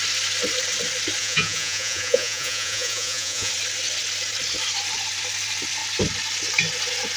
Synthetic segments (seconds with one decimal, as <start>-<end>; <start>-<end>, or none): 1.2-3.5